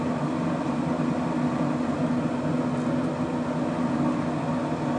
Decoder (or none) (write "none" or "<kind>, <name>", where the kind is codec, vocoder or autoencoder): none